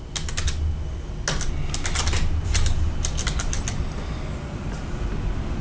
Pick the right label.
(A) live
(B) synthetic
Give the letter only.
A